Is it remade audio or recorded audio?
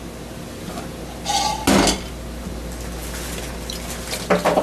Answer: recorded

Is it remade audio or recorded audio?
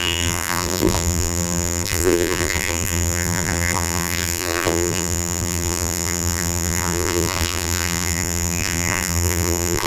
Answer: remade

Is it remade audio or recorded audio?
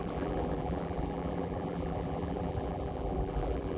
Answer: remade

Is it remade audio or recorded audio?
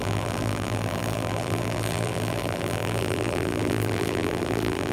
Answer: remade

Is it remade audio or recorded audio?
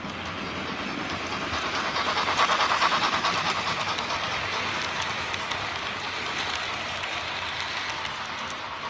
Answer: recorded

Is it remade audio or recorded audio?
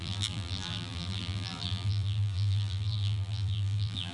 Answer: remade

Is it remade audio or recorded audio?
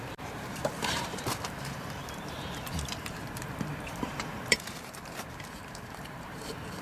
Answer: remade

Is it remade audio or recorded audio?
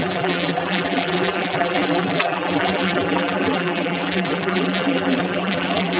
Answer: remade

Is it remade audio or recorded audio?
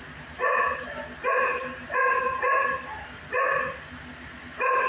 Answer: recorded